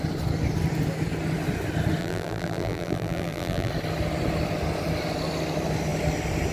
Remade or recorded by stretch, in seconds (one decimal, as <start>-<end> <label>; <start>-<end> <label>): 0.0-2.0 recorded; 2.0-3.7 remade; 3.7-6.5 recorded